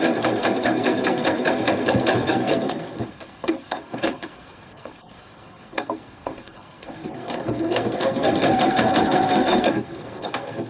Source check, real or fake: fake